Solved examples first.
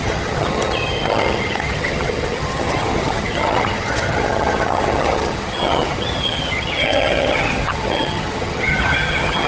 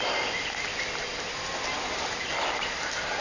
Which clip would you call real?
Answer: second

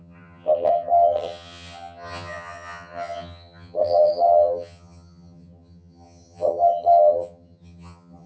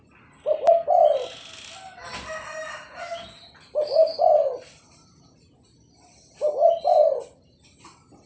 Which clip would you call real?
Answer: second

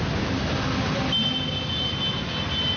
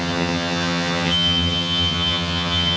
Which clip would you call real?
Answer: first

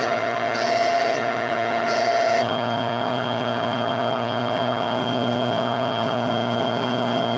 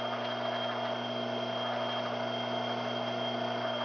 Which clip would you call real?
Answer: second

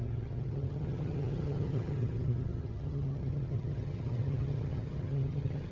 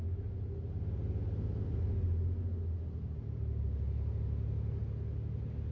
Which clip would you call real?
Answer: second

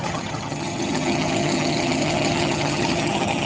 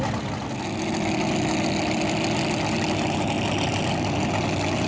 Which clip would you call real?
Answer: second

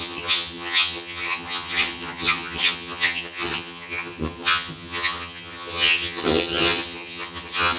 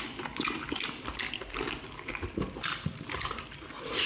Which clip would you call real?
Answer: second